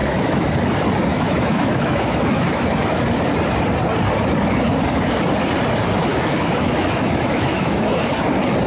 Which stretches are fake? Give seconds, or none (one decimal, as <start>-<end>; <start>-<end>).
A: 0.0-0.5; 1.1-3.0; 6.1-8.1